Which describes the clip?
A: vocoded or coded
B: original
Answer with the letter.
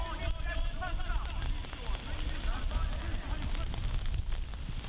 B